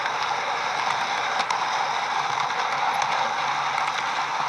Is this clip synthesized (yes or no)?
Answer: no